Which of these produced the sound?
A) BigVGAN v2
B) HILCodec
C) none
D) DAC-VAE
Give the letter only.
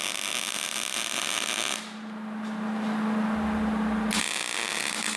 C